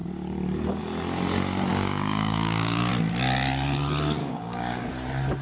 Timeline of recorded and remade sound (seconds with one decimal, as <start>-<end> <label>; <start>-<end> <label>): 0.0-1.7 recorded; 1.7-2.9 remade; 2.9-4.2 recorded; 4.2-4.9 remade; 4.9-5.4 recorded